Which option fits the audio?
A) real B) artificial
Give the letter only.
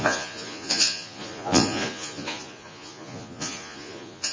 B